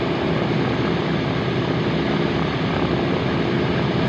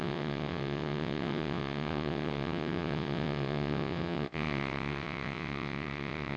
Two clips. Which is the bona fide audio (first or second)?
first